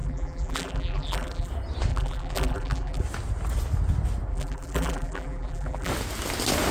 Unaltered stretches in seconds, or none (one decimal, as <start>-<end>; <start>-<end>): 1.5-1.9; 3.0-4.3; 5.9-6.7